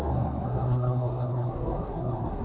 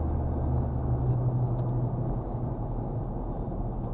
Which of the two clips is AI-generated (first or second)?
first